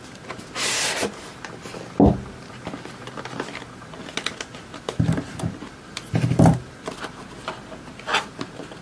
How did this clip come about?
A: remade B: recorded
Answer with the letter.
B